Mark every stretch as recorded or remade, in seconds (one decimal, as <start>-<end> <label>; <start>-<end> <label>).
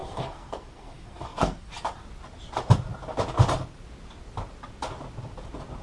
0.0-1.7 remade; 1.7-5.8 recorded